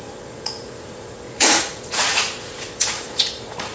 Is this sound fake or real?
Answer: fake